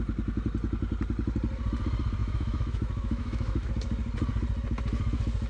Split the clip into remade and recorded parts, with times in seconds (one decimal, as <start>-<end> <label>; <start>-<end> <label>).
0.0-2.2 recorded; 2.2-3.7 remade; 3.7-5.5 recorded